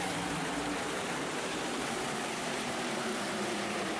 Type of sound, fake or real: fake